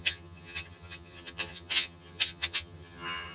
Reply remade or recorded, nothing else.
remade